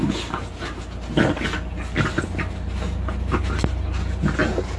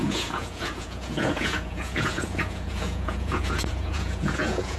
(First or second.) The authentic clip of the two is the first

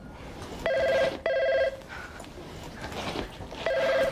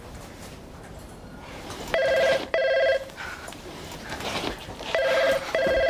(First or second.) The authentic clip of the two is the first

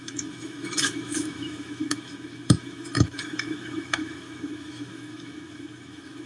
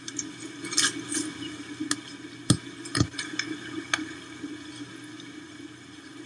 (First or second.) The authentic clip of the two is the second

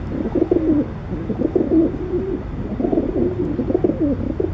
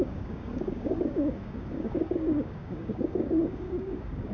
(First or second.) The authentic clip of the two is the first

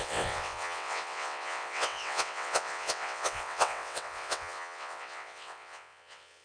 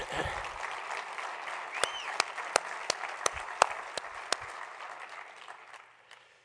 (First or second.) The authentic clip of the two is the second